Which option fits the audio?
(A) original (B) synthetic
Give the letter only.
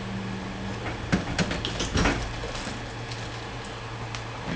A